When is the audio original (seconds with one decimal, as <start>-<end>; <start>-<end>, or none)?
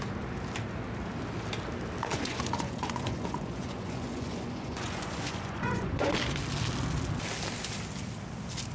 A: 0.0-2.1; 6.1-8.7